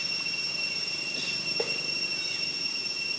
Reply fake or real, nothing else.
fake